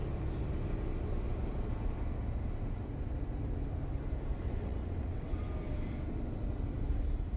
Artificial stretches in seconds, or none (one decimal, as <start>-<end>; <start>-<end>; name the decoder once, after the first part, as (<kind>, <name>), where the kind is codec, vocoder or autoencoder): 4.3-5.4 (vocoder, WaveNeXt)